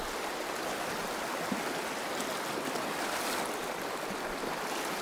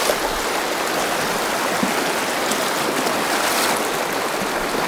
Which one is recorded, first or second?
second